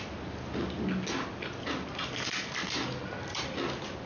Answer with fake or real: real